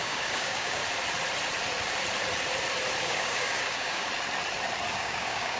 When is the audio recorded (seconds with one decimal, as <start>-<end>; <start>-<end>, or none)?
0.8-3.0; 4.1-4.9